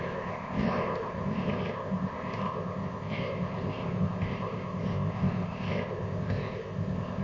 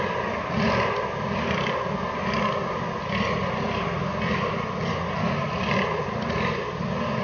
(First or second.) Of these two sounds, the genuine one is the second